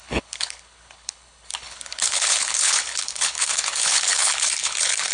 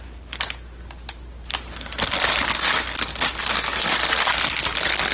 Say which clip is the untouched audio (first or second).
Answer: second